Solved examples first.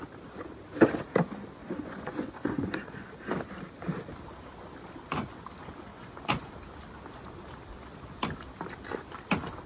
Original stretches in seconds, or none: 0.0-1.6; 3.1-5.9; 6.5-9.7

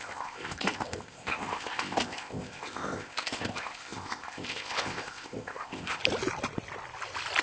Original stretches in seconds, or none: 6.0-7.4

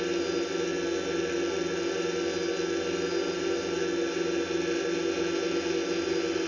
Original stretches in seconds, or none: 0.0-6.5

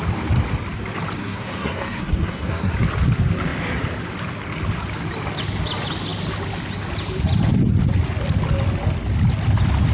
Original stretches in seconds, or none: 0.0-1.2; 2.7-9.9

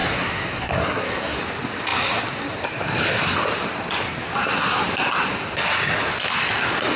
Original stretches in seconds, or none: 1.4-7.0

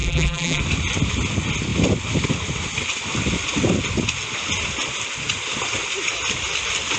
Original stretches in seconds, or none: 0.6-7.0

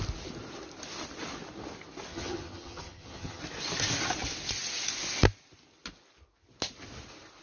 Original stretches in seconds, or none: 0.0-2.1; 3.4-7.4